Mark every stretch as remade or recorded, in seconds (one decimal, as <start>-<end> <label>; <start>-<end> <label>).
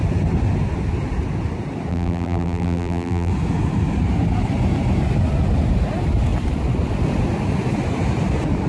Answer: 0.0-1.9 recorded; 1.9-3.3 remade; 3.3-8.7 recorded